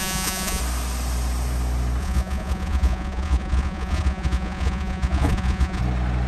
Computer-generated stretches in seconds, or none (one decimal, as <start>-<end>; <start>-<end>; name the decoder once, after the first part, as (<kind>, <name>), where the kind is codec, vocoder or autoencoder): 0.0-0.6 (vocoder, Vocos); 2.0-5.8